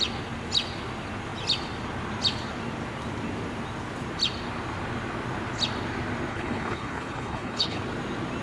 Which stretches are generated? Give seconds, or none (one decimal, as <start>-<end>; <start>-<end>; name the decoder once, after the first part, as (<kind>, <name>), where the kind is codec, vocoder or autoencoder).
6.3-7.8 (codec, HILCodec)